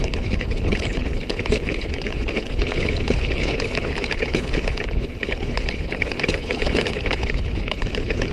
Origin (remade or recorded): remade